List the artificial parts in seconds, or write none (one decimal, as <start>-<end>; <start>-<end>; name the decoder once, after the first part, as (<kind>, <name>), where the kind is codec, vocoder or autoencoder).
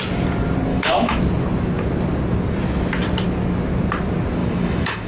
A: 0.7-1.2 (autoencoder, DAC-VAE); 4.4-5.1